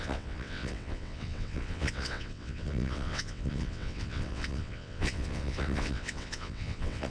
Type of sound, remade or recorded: remade